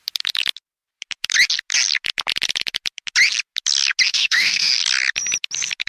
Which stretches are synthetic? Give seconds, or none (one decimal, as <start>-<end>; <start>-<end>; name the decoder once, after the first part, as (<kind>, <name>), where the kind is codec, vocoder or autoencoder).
4.1-4.7 (autoencoder, DAC-VAE)